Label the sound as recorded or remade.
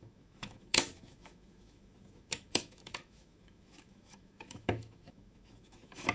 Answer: remade